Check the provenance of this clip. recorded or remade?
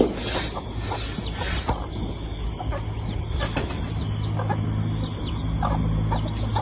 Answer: recorded